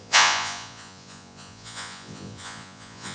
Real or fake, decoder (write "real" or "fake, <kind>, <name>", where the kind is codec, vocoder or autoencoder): fake, vocoder, Vocos